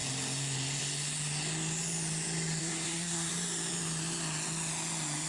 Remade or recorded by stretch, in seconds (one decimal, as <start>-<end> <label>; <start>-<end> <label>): 0.0-2.6 recorded; 2.6-3.3 remade; 3.3-5.3 recorded

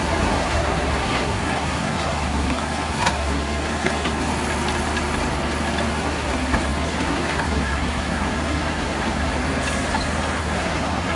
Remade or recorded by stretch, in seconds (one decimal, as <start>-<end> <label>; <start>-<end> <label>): 0.0-4.3 remade; 4.3-5.9 recorded; 5.9-9.3 remade; 9.3-10.4 recorded; 10.4-11.2 remade

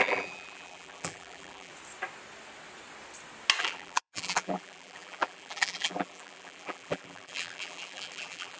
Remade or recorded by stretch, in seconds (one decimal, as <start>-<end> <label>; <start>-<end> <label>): 0.0-1.7 remade; 1.7-3.6 recorded; 3.6-8.6 remade

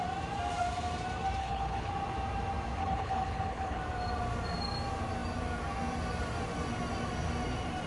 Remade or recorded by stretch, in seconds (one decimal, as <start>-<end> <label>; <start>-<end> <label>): 0.0-1.4 recorded; 1.4-1.9 remade; 1.9-2.8 recorded; 2.8-3.8 remade; 3.8-7.9 recorded